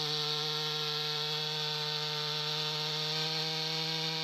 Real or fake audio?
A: real